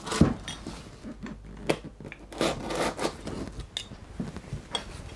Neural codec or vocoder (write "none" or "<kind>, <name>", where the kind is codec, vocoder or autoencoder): none